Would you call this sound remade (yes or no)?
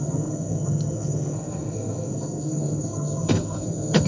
yes